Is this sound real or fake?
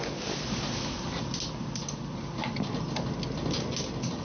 real